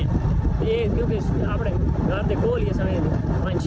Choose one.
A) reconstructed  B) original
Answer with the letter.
B